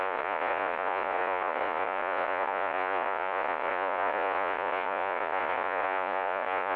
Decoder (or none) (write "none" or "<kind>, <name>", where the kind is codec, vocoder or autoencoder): vocoder, Vocos